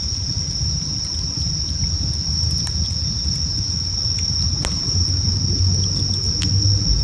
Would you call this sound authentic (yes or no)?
yes